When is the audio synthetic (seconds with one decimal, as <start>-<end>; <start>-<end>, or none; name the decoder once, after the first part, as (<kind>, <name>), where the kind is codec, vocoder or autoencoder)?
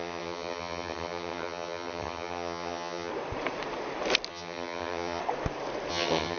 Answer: 0.0-3.1 (vocoder, HiFi-GAN); 4.3-5.2; 5.9-6.4